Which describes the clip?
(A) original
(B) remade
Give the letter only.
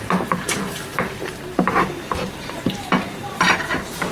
B